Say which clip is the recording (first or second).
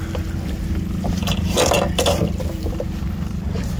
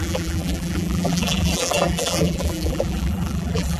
first